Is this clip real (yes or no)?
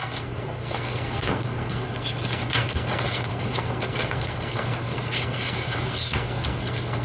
no